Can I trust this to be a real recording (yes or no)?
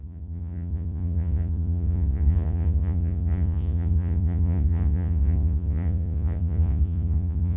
no